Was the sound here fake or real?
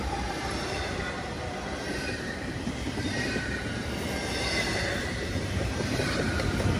fake